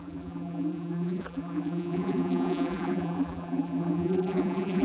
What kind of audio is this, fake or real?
fake